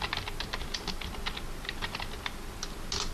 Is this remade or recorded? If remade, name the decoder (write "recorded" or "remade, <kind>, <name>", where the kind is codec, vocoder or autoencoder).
recorded